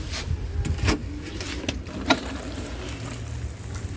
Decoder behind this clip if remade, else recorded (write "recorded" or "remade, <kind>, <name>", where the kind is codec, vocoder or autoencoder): recorded